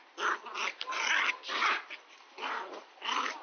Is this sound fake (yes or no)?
no